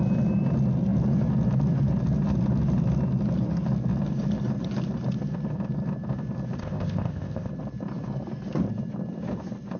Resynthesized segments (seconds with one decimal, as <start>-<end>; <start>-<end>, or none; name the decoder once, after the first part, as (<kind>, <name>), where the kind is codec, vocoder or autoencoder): 6.6-7.5 (codec, ZipCodec)